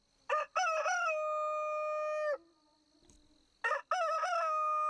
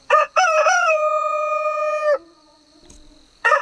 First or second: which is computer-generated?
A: second